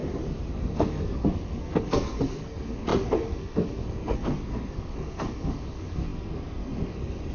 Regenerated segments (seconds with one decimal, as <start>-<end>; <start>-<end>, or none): 0.5-7.3